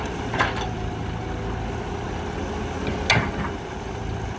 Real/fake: real